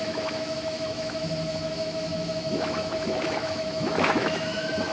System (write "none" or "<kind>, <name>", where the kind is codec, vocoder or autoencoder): autoencoder, DAC-VAE